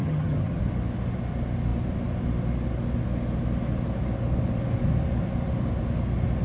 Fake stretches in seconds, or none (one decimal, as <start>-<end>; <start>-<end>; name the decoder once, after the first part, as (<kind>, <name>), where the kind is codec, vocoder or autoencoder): 0.0-0.6 (vocoder, HiFi-GAN)